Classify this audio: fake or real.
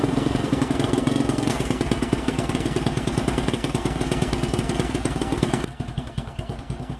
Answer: fake